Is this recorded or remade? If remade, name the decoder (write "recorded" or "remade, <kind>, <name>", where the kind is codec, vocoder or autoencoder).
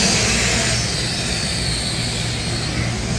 recorded